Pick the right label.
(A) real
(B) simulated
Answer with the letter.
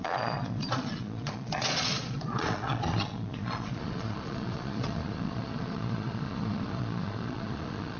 B